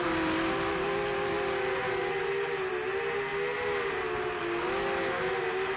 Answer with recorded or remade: recorded